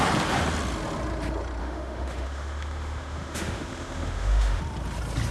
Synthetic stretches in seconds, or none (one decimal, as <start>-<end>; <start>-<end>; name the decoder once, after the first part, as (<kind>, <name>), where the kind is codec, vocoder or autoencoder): 1.6-4.6 (autoencoder, DAC-VAE)